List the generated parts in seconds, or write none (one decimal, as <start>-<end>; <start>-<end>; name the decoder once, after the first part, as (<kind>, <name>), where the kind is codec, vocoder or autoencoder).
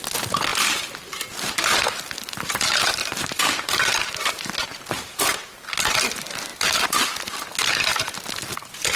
3.0-5.2 (vocoder, BigVGAN v2)